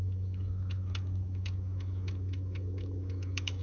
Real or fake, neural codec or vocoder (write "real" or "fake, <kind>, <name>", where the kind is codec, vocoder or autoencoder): fake, autoencoder, DAC-VAE